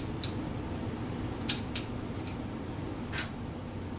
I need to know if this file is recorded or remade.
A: recorded